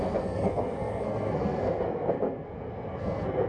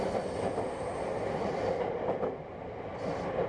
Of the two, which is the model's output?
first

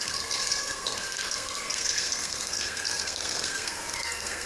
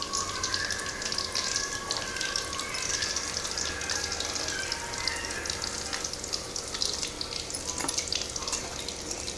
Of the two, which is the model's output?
first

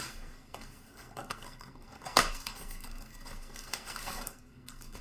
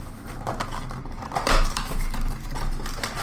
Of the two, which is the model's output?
first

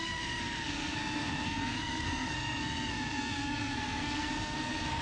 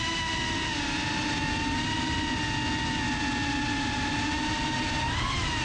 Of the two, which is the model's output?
first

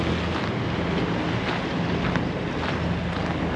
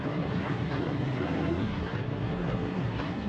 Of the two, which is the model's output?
second